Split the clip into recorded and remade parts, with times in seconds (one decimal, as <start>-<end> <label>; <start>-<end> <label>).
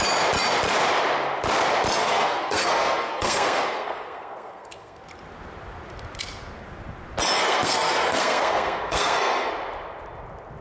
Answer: 0.0-2.0 recorded; 2.0-5.0 remade; 5.0-7.4 recorded; 7.4-9.5 remade; 9.5-10.6 recorded